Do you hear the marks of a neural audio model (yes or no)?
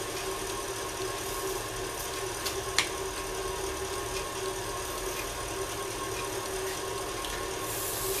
no